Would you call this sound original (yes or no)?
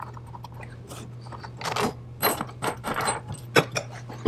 yes